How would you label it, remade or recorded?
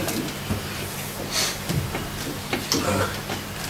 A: recorded